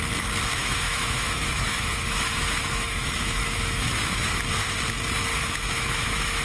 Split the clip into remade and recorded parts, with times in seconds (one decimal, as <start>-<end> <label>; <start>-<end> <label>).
0.0-0.6 recorded; 0.6-4.4 remade; 4.4-5.3 recorded; 5.3-6.4 remade